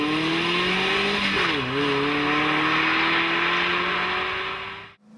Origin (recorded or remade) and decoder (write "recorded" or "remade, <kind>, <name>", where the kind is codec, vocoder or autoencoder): recorded